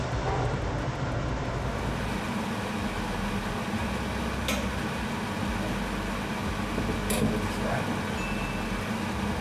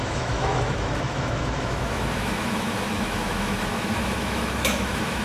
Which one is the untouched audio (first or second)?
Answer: first